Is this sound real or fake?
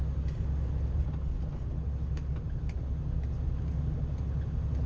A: real